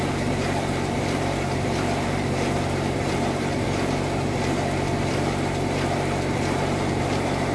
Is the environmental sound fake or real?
fake